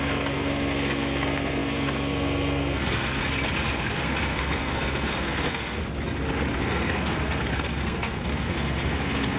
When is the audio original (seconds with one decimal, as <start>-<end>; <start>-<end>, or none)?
3.2-3.8; 5.8-6.6